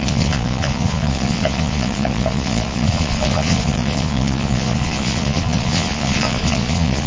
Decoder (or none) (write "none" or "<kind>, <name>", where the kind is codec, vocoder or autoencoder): vocoder, Vocos